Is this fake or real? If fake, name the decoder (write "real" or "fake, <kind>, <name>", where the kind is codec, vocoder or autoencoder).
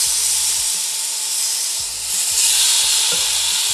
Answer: real